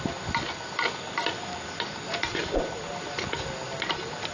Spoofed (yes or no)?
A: no